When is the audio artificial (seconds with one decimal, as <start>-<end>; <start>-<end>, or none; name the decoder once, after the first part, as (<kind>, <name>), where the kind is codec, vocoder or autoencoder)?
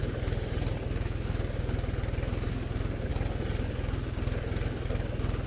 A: none